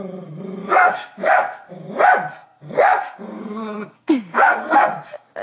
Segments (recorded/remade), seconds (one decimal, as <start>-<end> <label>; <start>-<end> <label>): 0.0-0.6 recorded; 0.6-1.7 remade; 1.7-2.3 recorded; 2.3-4.9 remade; 4.9-5.4 recorded

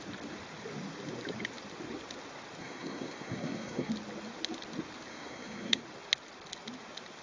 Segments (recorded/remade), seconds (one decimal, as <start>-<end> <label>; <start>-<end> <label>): 0.0-2.6 recorded; 2.6-3.9 remade; 3.9-5.1 recorded; 5.1-5.8 remade; 5.8-7.2 recorded

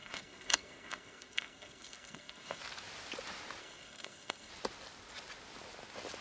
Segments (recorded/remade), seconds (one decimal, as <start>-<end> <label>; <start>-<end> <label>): 0.0-2.6 remade; 2.6-3.6 recorded; 3.6-4.5 remade; 4.5-6.2 recorded

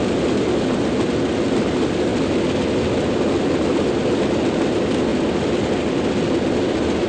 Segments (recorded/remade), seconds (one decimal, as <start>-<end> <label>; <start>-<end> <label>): 0.0-7.1 recorded

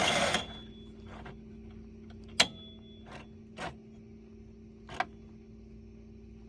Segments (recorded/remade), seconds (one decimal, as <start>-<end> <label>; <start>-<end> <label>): 0.0-6.5 recorded

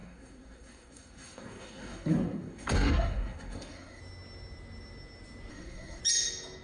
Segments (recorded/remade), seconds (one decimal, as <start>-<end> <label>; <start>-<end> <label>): 0.0-4.0 remade; 4.0-5.5 recorded; 5.5-6.0 remade; 6.0-6.6 recorded